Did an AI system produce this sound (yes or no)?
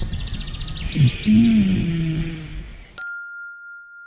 no